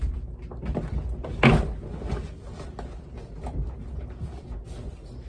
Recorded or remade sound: recorded